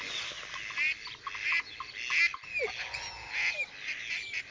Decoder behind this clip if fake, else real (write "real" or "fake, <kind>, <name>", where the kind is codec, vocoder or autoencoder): real